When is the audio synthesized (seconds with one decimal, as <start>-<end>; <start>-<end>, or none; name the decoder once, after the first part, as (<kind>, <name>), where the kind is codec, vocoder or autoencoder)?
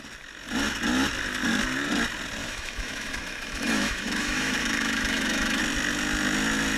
2.4-5.6 (autoencoder, DAC-VAE)